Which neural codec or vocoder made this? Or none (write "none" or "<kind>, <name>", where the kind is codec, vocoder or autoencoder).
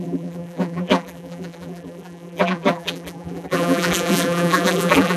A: vocoder, BigVGAN v2